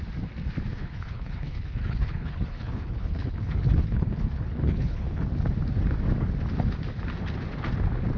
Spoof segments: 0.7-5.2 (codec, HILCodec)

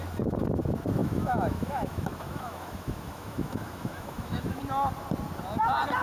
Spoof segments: 1.0-4.6 (autoencoder, DAC-VAE)

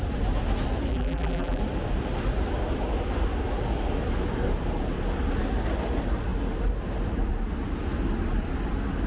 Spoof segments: 0.9-1.6 (vocoder, BigVGAN v2)

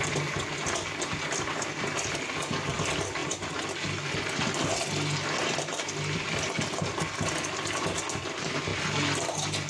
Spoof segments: none

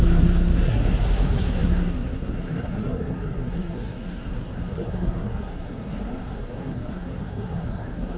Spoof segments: 0.0-8.2 (codec, SNAC)